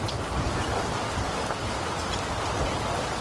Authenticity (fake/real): real